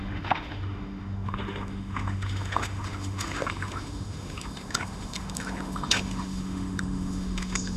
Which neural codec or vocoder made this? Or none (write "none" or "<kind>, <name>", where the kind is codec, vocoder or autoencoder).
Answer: autoencoder, DAC-VAE